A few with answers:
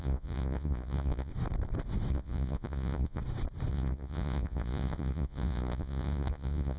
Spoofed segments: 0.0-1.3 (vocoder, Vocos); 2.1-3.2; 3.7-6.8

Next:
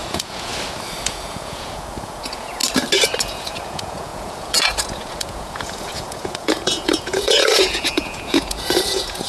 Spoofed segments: 0.0-0.5 (vocoder, Vocos); 1.0-2.6; 3.2-9.3

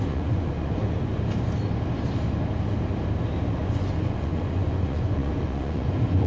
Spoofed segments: 0.0-1.1 (vocoder, Vocos); 3.6-6.3

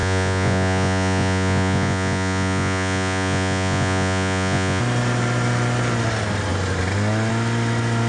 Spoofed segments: 0.0-4.8 (vocoder, Vocos)

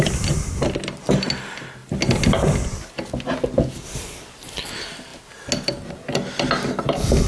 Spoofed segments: none

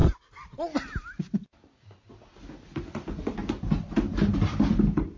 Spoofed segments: none

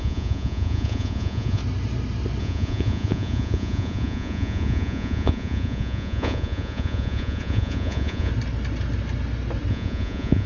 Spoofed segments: 0.0-1.6 (vocoder, Vocos); 2.4-8.3; 9.7-10.5